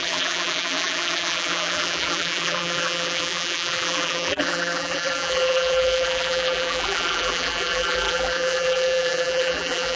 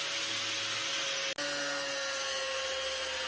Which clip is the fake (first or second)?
first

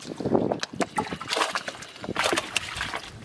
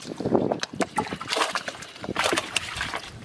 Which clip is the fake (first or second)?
second